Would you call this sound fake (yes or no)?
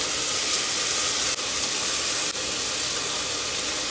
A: no